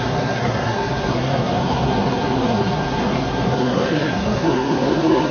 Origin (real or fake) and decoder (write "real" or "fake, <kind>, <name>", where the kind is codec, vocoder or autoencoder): fake, codec, SNAC